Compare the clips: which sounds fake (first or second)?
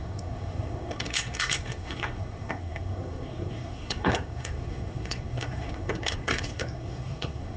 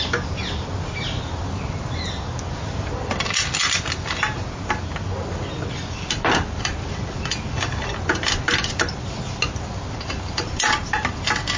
first